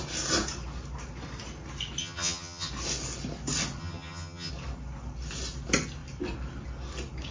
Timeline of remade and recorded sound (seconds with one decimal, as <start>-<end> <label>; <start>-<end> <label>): 0.0-2.0 recorded; 2.0-2.7 remade; 2.7-3.8 recorded; 3.8-4.5 remade; 4.5-7.3 recorded